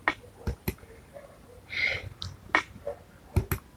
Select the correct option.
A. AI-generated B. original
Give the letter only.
B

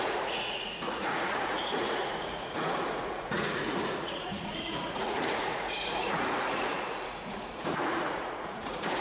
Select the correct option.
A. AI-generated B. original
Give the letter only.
A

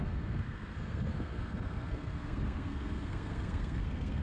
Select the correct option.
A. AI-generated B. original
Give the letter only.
A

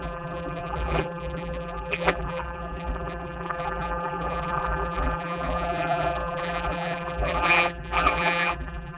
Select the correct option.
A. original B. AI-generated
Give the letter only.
B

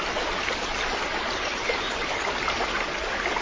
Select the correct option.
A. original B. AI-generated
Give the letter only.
A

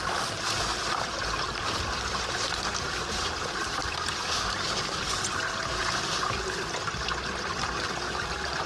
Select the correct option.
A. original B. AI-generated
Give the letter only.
B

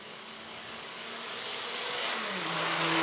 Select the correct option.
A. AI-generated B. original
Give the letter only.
A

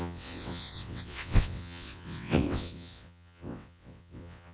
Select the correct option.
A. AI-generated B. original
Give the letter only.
A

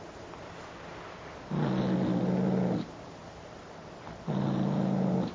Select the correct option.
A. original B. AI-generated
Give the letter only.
A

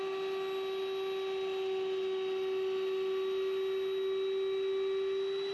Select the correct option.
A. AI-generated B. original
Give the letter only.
B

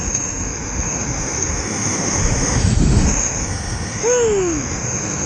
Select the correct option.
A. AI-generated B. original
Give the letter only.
A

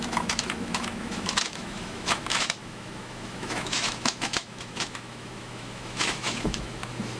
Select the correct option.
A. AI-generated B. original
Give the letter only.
A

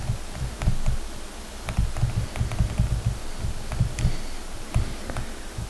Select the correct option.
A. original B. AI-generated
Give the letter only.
A